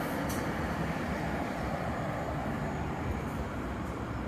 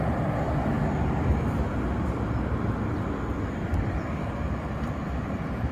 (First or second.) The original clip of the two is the second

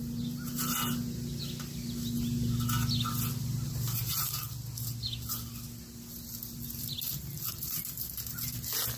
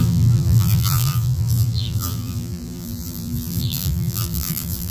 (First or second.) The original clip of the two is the first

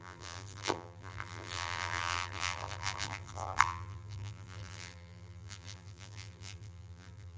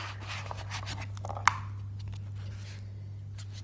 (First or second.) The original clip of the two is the second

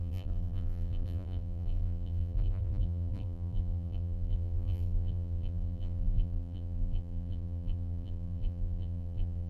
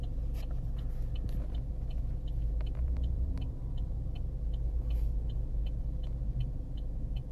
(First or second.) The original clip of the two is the second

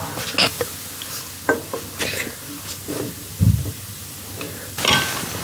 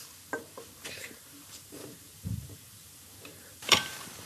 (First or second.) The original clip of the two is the first